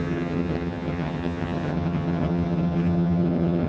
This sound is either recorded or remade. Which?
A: remade